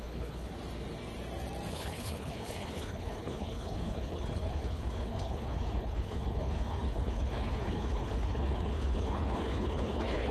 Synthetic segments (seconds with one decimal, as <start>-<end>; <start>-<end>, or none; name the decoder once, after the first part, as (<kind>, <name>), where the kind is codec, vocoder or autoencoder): 0.0-0.5 (codec, HILCodec); 1.7-10.3